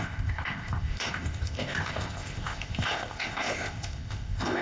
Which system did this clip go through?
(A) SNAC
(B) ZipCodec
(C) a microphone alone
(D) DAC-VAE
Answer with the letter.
B